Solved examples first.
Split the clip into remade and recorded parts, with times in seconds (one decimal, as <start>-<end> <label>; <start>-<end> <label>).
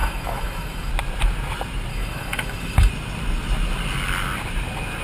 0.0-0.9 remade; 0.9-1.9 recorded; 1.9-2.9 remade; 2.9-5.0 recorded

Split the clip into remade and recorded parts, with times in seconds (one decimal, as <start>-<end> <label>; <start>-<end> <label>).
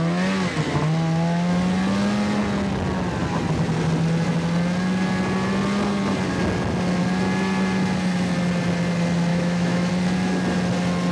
0.0-9.3 recorded; 9.3-9.9 remade; 9.9-11.1 recorded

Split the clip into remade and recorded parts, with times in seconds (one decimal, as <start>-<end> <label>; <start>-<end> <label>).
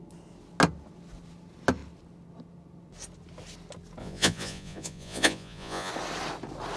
0.0-4.0 recorded; 4.0-5.9 remade; 5.9-6.8 recorded